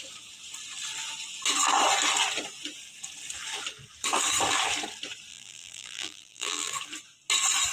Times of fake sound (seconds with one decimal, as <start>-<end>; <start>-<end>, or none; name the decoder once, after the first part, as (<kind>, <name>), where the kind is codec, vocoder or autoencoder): 5.3-6.7 (vocoder, BigVGAN v2)